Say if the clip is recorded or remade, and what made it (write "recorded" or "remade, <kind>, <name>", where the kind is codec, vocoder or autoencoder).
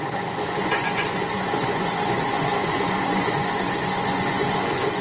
remade, vocoder, Vocos